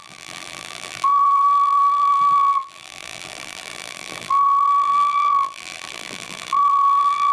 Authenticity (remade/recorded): remade